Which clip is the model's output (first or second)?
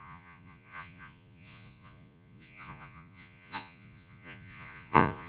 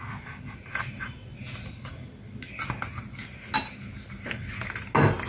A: first